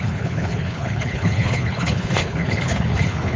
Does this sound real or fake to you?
fake